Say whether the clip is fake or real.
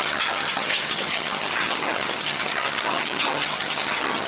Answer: fake